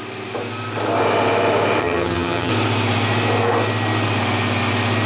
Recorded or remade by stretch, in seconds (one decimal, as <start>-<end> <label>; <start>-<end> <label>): 0.0-1.8 recorded; 1.8-2.5 remade; 2.5-5.1 recorded

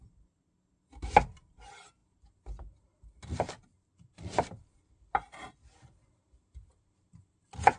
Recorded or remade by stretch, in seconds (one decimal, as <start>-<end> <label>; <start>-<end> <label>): 0.0-7.8 recorded